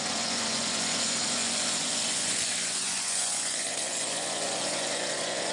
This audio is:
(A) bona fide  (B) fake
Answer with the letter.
B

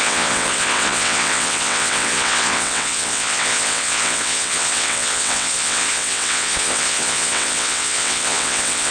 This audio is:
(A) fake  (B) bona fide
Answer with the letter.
A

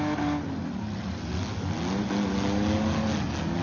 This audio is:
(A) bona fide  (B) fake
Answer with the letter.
A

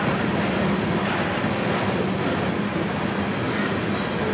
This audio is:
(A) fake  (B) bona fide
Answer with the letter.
B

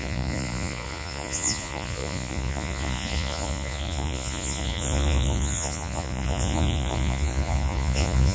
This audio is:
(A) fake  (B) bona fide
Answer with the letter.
A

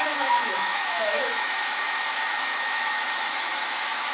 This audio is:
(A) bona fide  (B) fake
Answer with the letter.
B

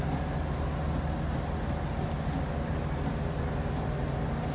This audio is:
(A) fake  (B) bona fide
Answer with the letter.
B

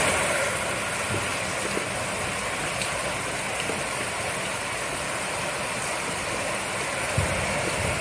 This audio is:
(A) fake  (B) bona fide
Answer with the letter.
B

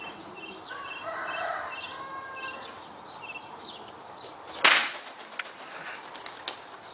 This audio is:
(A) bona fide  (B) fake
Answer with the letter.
A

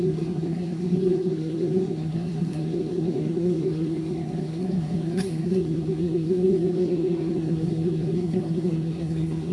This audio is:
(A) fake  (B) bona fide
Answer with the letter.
A